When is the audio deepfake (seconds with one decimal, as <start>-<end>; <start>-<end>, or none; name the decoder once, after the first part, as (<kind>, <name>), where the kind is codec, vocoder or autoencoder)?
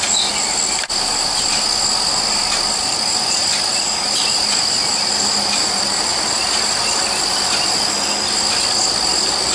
none